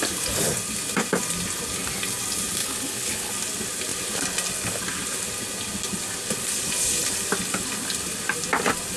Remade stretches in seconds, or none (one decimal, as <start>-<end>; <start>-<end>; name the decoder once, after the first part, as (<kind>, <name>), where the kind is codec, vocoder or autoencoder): 2.6-3.3 (codec, HILCodec)